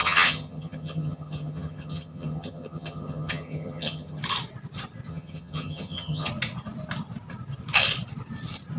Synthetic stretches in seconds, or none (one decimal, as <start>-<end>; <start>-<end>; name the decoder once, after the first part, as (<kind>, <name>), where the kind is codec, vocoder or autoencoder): 0.0-4.2 (vocoder, HiFi-GAN); 5.1-6.3